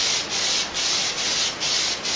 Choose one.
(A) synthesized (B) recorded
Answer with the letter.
B